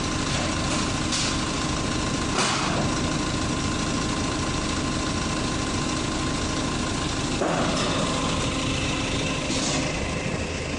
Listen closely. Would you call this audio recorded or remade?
recorded